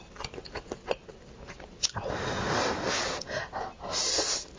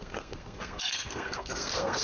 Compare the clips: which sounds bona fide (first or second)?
first